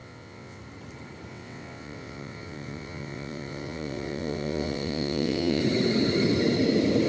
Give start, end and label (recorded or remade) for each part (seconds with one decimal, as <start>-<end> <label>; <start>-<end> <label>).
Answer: 0.0-0.6 remade; 0.6-1.3 recorded; 1.3-5.6 remade; 5.6-7.1 recorded